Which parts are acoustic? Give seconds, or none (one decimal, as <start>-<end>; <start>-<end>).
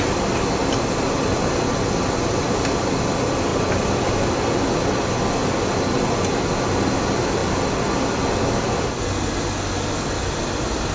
0.0-10.9